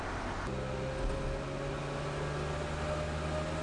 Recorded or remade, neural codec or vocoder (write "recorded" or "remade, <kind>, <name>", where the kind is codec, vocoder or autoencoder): recorded